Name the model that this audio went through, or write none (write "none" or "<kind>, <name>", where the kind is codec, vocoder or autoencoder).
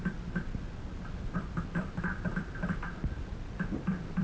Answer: none